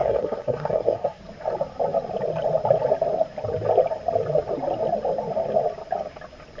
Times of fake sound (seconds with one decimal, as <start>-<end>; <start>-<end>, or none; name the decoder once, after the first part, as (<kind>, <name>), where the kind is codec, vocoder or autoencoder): 0.0-1.2 (codec, SNAC)